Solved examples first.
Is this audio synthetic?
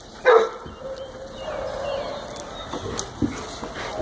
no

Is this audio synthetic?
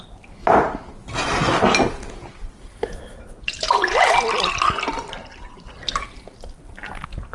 no